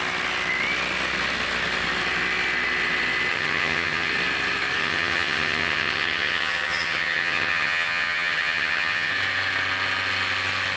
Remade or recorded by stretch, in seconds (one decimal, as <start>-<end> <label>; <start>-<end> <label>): 0.0-3.3 recorded; 3.3-4.1 remade; 4.1-4.8 recorded; 4.8-9.1 remade; 9.1-10.8 recorded